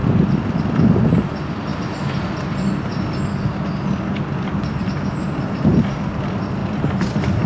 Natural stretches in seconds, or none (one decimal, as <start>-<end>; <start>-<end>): 0.8-1.7; 3.2-6.6